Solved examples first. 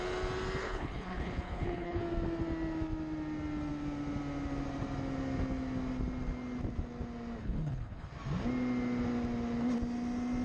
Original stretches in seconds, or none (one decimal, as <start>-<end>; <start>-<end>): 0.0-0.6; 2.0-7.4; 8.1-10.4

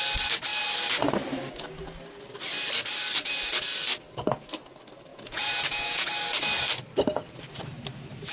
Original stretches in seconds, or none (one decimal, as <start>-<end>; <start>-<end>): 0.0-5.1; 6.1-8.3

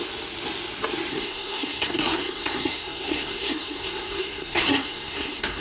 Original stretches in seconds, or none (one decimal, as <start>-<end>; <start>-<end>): 0.0-1.1

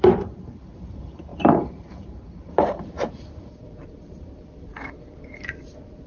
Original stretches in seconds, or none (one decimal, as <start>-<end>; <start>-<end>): none

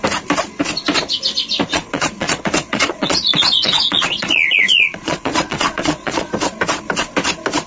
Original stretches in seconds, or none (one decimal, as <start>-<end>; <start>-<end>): 0.0-1.7; 6.3-7.7

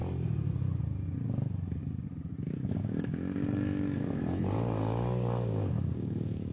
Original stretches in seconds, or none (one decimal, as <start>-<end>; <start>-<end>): 0.0-2.8